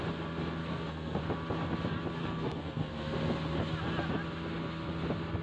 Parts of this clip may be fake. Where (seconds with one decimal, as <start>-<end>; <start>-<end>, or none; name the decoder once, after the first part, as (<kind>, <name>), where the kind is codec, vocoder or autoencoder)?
0.6-1.2 (codec, SNAC); 2.2-2.9